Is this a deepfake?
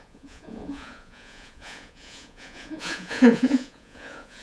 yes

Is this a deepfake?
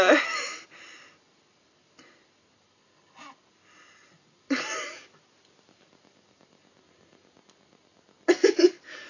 no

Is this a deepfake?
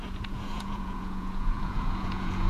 yes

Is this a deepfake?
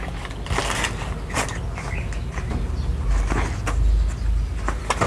no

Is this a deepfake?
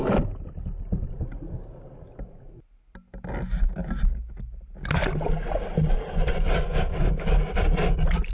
no